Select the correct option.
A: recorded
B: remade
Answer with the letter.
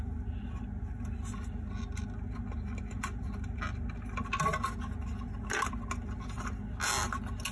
A